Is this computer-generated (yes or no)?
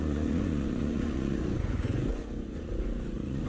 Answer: yes